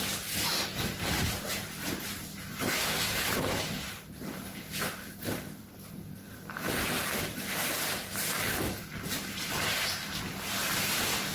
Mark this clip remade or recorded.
remade